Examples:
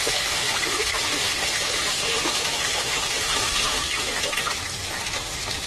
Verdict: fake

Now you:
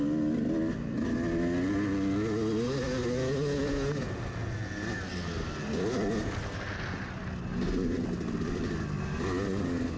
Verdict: real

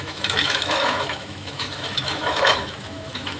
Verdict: fake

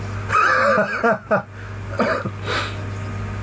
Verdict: real